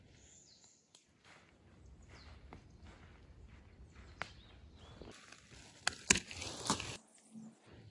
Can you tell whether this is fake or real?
real